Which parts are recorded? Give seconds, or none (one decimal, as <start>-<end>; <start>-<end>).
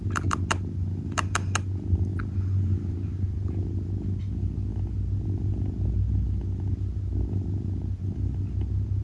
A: 0.0-9.0